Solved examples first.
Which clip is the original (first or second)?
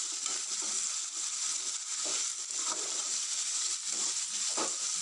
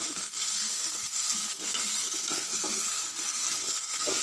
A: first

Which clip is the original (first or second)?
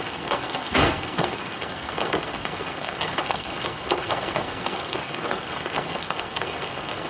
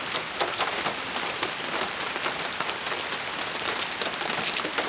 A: second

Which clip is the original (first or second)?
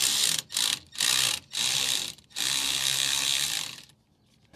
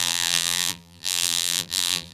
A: first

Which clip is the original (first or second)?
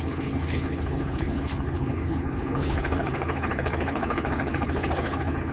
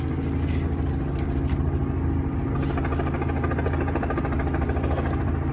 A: second